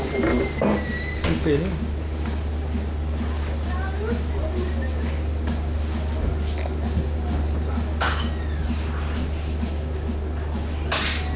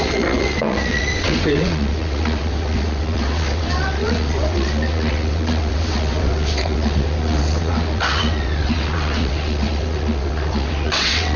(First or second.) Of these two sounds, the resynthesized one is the second